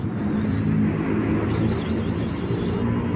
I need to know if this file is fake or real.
real